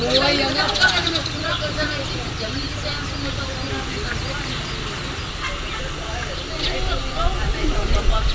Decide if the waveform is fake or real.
real